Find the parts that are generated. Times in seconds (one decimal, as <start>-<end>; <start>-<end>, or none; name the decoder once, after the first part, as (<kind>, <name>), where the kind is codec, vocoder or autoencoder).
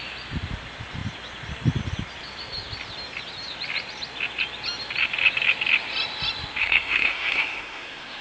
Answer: 6.6-8.2 (codec, SNAC)